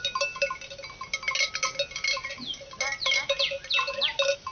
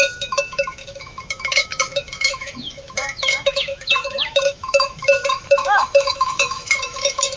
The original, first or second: first